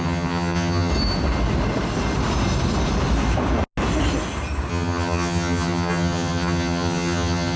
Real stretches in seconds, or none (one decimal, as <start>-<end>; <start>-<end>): 0.9-4.7